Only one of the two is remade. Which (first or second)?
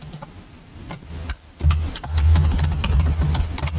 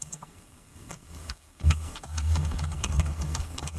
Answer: second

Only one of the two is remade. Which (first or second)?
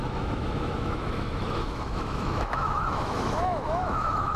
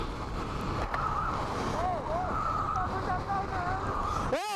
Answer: first